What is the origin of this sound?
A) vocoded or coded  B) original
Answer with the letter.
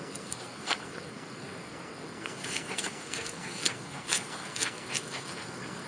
A